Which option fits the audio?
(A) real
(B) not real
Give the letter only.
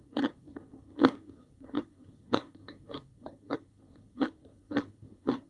B